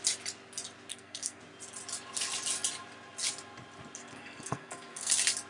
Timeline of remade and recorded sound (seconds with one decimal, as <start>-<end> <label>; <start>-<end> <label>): 0.0-0.9 recorded; 0.9-1.4 remade; 1.4-4.0 recorded; 4.0-5.1 remade; 5.1-5.5 recorded